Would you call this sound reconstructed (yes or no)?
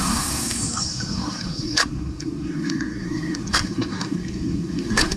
yes